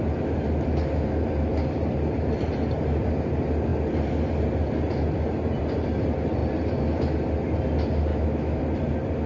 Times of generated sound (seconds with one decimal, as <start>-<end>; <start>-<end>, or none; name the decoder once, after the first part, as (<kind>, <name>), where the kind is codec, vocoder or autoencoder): 8.1-8.6 (autoencoder, DAC-VAE)